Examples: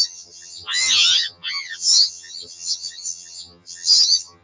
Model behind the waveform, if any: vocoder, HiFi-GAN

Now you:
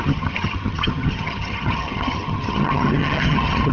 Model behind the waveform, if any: vocoder, HiFi-GAN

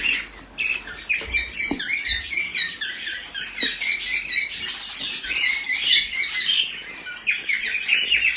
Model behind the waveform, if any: none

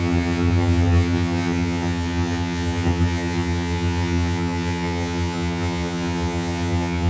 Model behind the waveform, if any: vocoder, HiFi-GAN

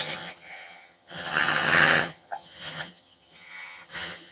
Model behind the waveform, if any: vocoder, HiFi-GAN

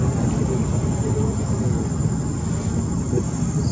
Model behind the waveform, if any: none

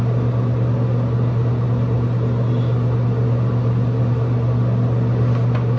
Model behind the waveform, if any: none